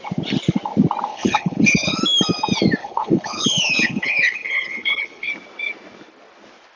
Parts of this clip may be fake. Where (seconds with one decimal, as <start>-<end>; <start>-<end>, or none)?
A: 1.1-2.0; 2.8-5.3